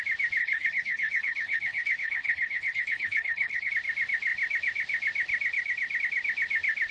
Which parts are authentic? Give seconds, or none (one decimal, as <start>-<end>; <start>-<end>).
0.0-0.4; 3.7-6.9